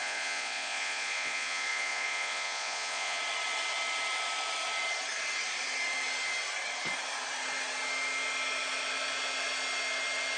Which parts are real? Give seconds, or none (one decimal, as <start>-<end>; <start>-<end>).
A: 3.2-10.4

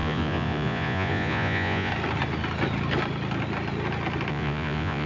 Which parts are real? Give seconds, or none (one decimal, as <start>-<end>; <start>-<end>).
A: 1.9-4.3